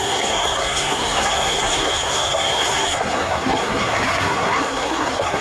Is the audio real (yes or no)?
no